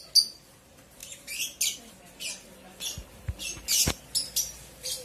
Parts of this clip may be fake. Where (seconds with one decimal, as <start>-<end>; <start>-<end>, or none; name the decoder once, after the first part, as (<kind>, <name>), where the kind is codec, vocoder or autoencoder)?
none